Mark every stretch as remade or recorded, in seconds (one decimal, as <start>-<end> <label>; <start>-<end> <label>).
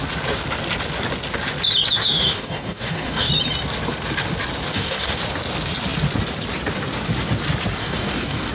0.0-2.0 recorded; 2.0-3.3 remade; 3.3-4.7 recorded; 4.7-5.2 remade; 5.2-7.8 recorded; 7.8-8.5 remade